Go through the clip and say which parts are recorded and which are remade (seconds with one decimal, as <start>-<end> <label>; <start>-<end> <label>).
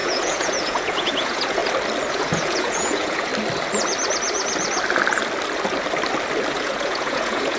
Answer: 0.0-1.6 remade; 1.6-2.1 recorded; 2.1-3.3 remade; 3.3-6.5 recorded; 6.5-7.6 remade